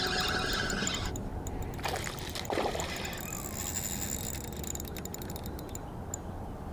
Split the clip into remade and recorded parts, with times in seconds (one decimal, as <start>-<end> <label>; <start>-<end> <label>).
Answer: 0.0-6.7 recorded